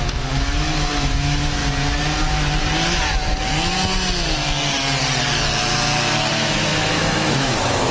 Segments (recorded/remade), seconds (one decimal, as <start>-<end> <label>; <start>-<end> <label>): 0.0-1.6 remade; 1.6-6.3 recorded; 6.3-7.9 remade

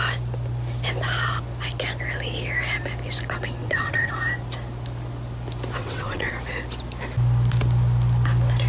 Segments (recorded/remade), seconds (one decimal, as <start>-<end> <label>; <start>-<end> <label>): 0.0-3.6 recorded; 3.6-4.1 remade; 4.1-5.8 recorded; 5.8-6.3 remade; 6.3-8.7 recorded

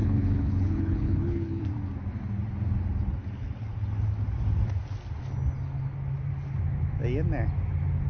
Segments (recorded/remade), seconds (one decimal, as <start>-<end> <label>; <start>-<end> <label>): 0.0-1.6 remade; 1.6-8.1 recorded

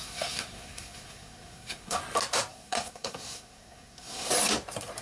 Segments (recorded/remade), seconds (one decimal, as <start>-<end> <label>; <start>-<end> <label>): 0.0-2.0 remade; 2.0-2.5 recorded; 2.5-4.3 remade; 4.3-5.0 recorded